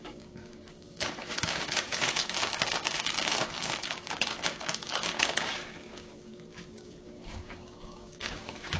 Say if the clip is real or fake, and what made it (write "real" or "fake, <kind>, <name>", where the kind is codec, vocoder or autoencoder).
fake, codec, DAC